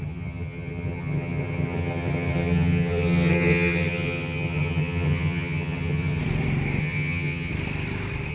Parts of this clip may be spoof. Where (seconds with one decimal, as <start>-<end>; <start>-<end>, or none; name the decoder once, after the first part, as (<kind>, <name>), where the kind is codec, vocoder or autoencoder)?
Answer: 0.0-6.2 (vocoder, HiFi-GAN); 6.8-7.5